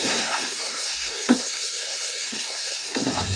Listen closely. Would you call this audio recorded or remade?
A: remade